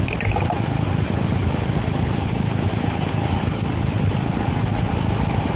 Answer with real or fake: real